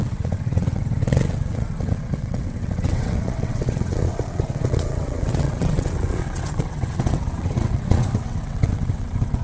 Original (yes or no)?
no